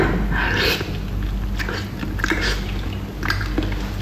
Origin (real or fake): real